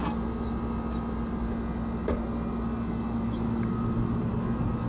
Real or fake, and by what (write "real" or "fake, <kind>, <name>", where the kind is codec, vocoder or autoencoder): real